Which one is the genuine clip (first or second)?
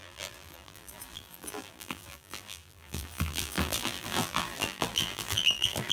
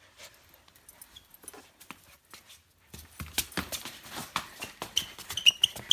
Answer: second